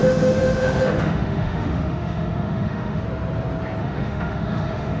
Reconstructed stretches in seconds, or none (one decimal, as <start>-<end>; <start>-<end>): 0.0-3.0; 3.8-5.0